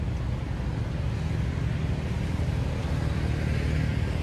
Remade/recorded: recorded